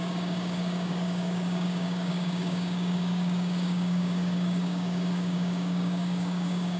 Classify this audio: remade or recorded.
remade